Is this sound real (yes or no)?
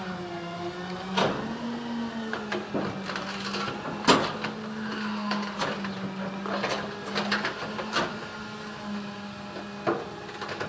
yes